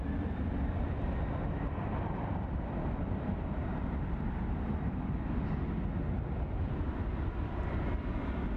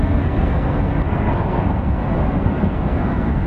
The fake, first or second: second